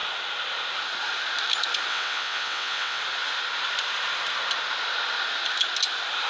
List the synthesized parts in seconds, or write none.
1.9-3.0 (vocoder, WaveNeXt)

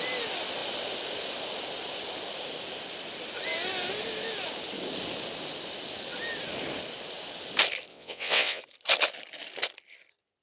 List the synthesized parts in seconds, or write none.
7.9-8.6 (vocoder, WaveNeXt)